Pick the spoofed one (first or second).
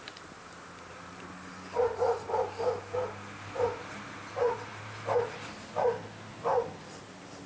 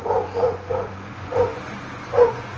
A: second